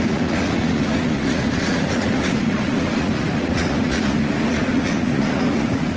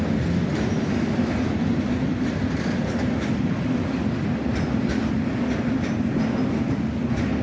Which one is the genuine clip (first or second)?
second